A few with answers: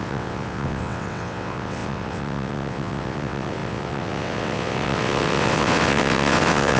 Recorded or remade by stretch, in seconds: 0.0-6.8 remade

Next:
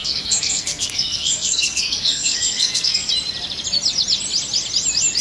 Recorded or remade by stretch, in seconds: 0.0-3.1 remade; 3.1-5.2 recorded

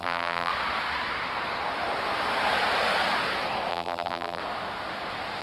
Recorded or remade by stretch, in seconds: 0.0-0.5 remade; 0.5-3.7 recorded; 3.7-4.4 remade; 4.4-5.4 recorded

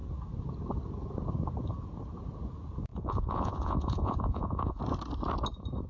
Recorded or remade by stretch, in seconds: 0.0-2.9 recorded; 2.9-4.8 remade; 4.8-5.9 recorded

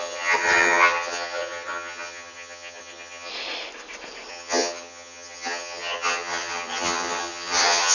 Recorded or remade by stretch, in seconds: 0.0-3.3 remade; 3.3-4.3 recorded; 4.3-7.9 remade